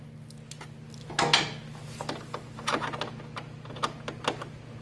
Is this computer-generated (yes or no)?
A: no